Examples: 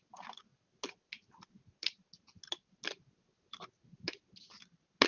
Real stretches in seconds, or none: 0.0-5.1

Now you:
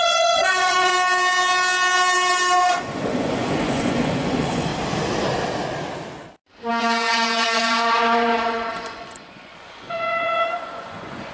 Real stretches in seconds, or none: 0.9-2.8; 4.7-6.7